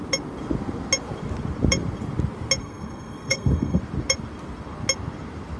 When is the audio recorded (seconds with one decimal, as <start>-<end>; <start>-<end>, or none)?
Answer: 0.0-2.6; 3.8-5.6